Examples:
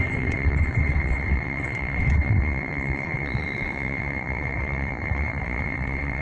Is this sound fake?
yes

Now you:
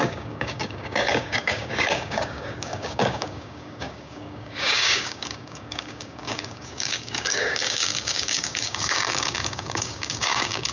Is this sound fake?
yes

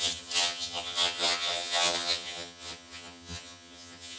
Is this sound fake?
yes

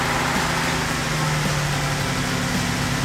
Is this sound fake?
no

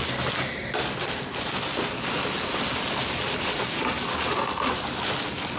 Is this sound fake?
no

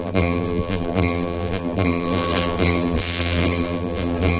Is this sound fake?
yes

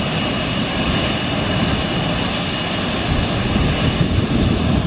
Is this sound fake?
no